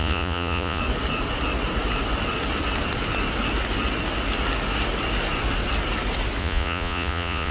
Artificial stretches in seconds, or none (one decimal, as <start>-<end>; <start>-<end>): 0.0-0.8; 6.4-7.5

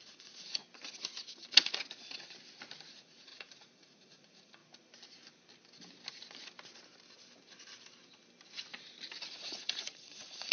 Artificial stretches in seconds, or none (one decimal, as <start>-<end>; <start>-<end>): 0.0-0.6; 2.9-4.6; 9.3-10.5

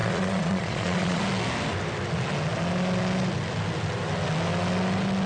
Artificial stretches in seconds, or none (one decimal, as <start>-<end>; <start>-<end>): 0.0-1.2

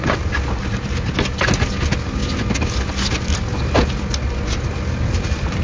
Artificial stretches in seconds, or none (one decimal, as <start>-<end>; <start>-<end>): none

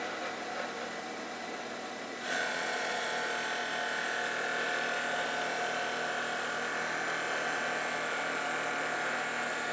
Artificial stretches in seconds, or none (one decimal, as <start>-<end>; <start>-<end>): 2.1-3.0